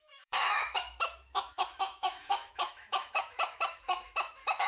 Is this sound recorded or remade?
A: remade